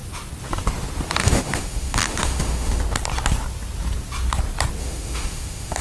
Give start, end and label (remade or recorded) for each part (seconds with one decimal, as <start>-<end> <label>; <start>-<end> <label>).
0.0-1.2 recorded; 1.2-2.8 remade; 2.8-4.8 recorded; 4.8-5.8 remade